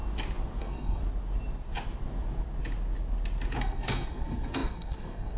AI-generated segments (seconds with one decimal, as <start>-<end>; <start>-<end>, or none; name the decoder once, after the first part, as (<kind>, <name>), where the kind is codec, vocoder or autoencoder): 0.6-1.0 (codec, SNAC); 3.6-5.4